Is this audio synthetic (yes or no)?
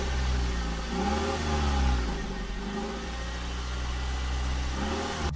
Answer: no